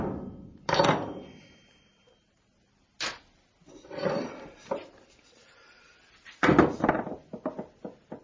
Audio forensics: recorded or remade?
recorded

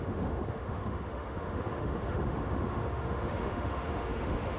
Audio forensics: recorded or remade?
remade